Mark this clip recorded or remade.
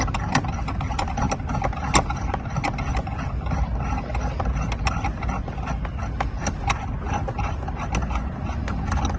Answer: recorded